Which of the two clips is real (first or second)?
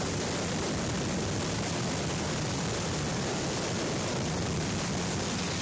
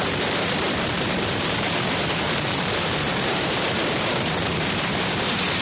first